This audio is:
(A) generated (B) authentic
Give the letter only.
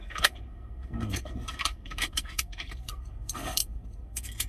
A